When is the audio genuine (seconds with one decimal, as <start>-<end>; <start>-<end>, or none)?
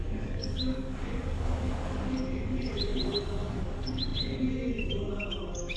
none